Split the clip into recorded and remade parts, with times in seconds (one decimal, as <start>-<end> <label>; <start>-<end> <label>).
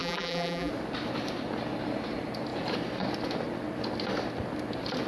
0.0-0.7 remade; 0.7-5.1 recorded